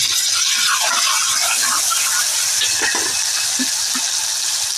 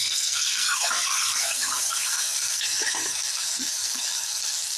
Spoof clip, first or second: second